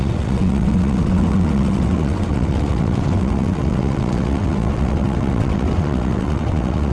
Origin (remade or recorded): remade